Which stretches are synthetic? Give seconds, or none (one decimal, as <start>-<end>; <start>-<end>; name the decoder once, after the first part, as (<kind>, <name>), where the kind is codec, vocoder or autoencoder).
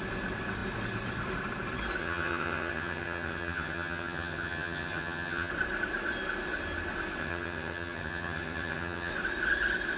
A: 2.0-5.5 (vocoder, HiFi-GAN); 7.2-9.1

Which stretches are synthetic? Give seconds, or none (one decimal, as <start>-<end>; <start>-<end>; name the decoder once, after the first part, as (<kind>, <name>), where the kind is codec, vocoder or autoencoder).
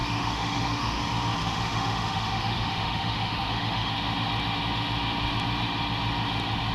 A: 0.0-1.0 (autoencoder, DAC-VAE); 1.4-3.9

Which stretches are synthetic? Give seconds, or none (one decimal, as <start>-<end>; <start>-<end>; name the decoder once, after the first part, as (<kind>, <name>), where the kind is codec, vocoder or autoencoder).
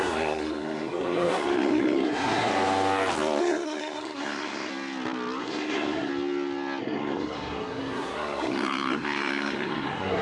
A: 0.0-2.5 (codec, SNAC); 3.4-4.7; 5.4-6.1; 6.8-10.2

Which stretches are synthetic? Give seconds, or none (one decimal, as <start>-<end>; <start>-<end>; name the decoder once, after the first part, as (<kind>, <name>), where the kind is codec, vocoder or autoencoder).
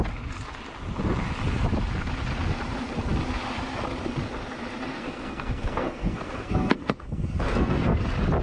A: 4.9-8.0 (codec, SNAC)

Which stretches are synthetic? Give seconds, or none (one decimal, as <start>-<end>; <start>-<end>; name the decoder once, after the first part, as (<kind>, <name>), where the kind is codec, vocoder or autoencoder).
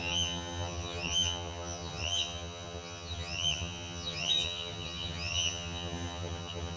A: 0.0-6.8 (vocoder, HiFi-GAN)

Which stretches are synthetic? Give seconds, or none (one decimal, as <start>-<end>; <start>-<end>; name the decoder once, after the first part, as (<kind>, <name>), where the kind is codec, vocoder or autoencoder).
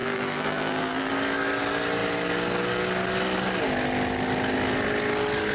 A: 0.0-1.1 (vocoder, BigVGAN v2)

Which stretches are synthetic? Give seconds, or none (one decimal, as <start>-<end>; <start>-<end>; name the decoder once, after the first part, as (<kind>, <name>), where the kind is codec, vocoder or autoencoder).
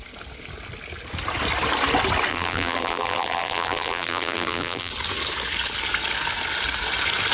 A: 2.3-4.9 (vocoder, BigVGAN v2)